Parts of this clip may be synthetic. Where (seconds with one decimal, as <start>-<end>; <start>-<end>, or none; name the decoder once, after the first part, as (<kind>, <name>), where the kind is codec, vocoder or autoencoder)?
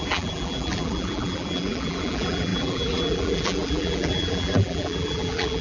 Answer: 0.0-5.6 (vocoder, BigVGAN v2)